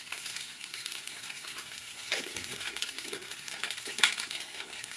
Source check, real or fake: fake